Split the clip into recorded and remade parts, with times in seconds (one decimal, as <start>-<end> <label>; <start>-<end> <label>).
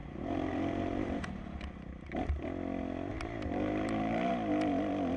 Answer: 0.0-1.6 remade; 1.6-3.1 recorded; 3.1-4.3 remade; 4.3-5.2 recorded